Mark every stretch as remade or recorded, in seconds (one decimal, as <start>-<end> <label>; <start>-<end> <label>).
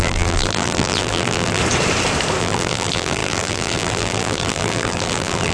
0.0-1.6 remade; 1.6-2.4 recorded; 2.4-5.5 remade